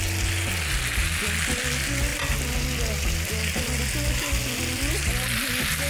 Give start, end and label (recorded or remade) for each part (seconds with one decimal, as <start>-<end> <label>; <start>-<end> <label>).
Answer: 0.0-5.9 recorded